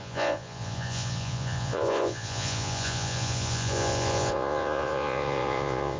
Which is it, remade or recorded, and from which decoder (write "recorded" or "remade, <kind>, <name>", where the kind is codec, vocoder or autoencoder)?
remade, vocoder, Vocos